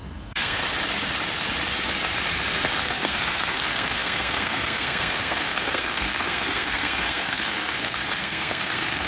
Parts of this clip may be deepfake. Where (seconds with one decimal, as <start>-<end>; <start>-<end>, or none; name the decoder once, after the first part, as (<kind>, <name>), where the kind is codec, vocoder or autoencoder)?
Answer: 0.0-0.6 (codec, SNAC); 2.8-9.1